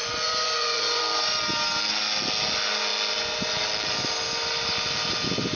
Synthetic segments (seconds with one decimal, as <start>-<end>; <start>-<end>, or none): 0.0-1.0